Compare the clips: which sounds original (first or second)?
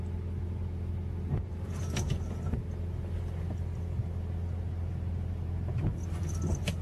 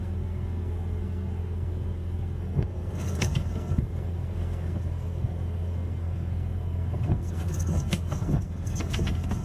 first